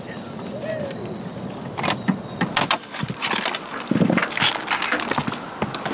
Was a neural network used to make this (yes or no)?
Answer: no